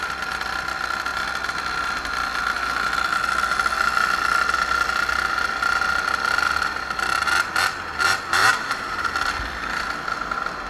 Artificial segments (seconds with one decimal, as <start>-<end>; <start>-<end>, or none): 8.4-9.3